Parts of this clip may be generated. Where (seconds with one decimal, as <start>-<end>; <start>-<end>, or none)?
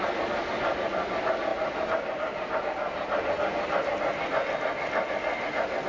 1.5-2.6